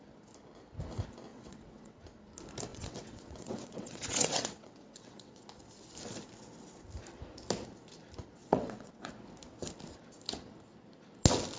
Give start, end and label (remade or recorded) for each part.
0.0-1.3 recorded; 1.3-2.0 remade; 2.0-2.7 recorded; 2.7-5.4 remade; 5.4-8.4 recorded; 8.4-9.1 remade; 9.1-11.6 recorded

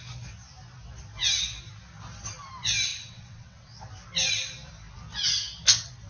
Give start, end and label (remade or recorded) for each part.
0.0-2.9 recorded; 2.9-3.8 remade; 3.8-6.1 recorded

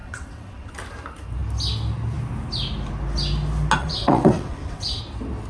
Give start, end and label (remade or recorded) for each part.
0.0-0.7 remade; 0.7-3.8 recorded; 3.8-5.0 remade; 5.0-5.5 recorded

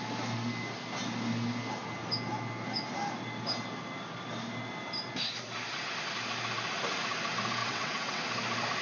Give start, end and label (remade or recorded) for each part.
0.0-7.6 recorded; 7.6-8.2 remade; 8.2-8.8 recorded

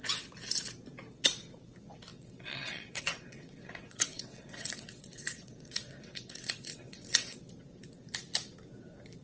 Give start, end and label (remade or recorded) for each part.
0.0-2.1 recorded; 2.1-7.4 remade; 7.4-9.2 recorded